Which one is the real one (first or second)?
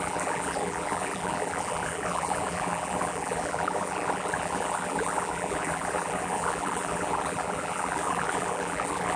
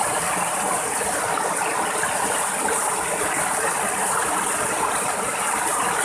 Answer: second